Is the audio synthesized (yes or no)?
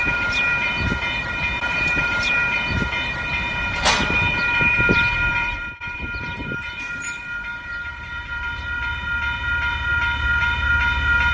yes